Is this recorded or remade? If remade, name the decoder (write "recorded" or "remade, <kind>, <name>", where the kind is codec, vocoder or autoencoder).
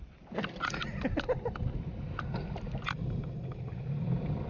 recorded